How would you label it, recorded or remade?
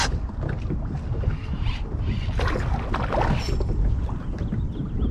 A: recorded